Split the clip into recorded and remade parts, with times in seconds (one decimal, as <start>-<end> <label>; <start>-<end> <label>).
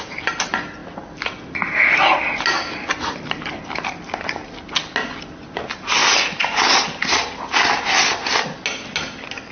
0.0-9.5 recorded